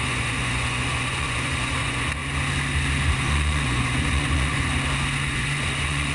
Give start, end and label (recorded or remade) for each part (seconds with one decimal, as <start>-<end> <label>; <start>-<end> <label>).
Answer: 0.0-2.2 remade; 2.2-3.0 recorded; 3.0-4.7 remade; 4.7-5.3 recorded; 5.3-6.1 remade